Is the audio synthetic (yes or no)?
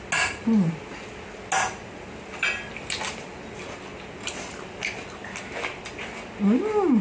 no